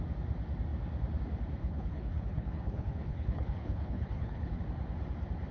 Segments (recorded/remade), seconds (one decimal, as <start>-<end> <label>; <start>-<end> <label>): 0.0-1.6 recorded; 1.6-4.6 remade; 4.6-5.5 recorded